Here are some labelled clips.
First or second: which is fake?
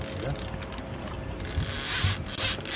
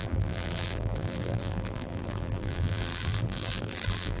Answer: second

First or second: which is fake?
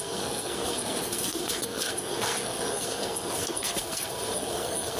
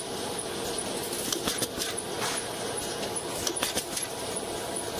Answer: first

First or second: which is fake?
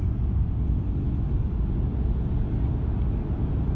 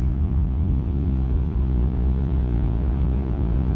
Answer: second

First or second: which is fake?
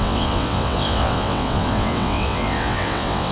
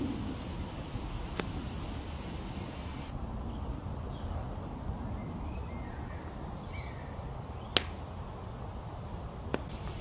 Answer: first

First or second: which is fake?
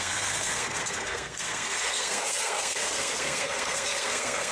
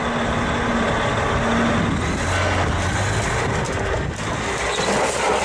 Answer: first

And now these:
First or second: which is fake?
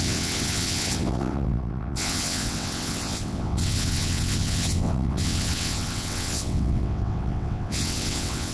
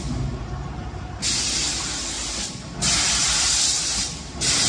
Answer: first